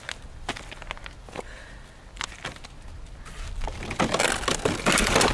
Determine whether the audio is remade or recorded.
recorded